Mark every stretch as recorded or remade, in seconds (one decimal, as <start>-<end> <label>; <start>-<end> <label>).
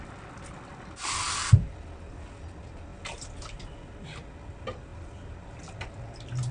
0.0-6.5 recorded